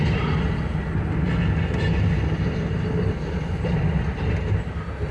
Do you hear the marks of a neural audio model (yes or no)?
no